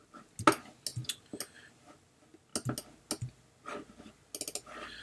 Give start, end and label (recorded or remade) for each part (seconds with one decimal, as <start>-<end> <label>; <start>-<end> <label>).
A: 0.0-5.0 recorded